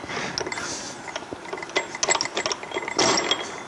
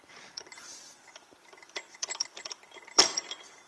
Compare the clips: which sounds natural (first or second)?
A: first